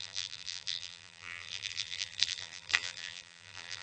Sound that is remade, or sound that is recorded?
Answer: remade